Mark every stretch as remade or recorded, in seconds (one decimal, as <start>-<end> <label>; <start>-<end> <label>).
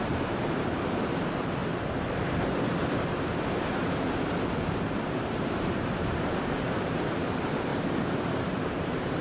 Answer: 0.0-9.2 remade